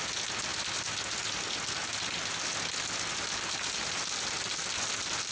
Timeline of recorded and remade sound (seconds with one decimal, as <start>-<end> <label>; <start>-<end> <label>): 0.0-5.3 recorded